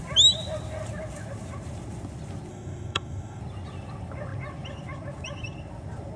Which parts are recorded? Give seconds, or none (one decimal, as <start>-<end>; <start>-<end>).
0.0-2.5; 3.4-6.2